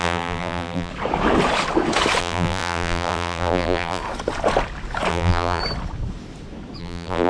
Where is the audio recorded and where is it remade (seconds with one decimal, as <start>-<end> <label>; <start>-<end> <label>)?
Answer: 0.0-0.9 remade; 0.9-2.2 recorded; 2.2-4.0 remade; 4.0-5.1 recorded; 5.1-5.6 remade; 5.6-6.8 recorded; 6.8-7.3 remade